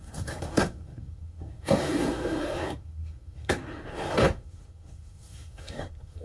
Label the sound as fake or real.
fake